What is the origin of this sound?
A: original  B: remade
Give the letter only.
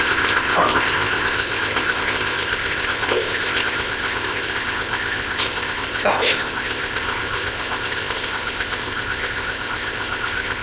B